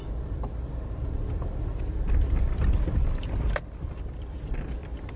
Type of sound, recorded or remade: remade